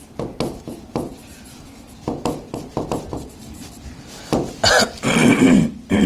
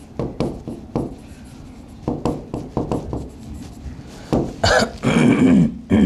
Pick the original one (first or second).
second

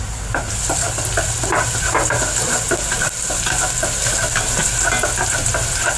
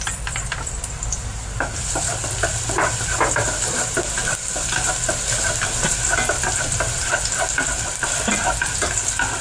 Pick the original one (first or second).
first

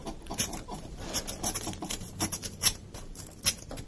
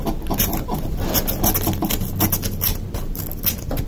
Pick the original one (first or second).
second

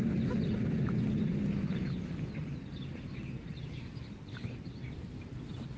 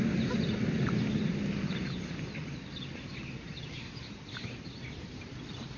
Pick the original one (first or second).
first